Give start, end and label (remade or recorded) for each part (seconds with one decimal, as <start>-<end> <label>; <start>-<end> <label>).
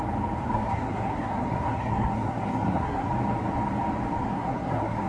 0.0-0.4 recorded; 0.4-3.1 remade; 3.1-4.2 recorded; 4.2-5.1 remade